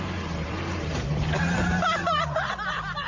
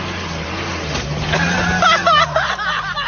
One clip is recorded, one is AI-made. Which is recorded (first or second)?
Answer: second